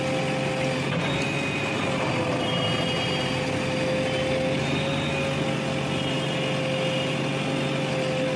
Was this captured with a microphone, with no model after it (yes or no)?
yes